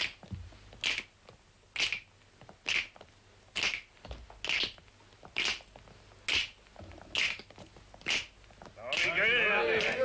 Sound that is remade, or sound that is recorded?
recorded